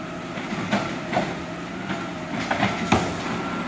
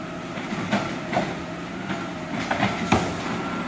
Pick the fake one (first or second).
second